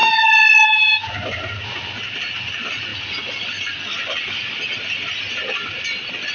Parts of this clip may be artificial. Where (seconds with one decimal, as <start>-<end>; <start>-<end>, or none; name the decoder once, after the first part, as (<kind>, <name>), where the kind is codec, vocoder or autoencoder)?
none